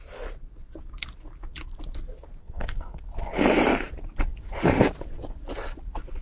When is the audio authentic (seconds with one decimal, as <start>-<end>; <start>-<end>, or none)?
0.0-2.4; 3.0-6.2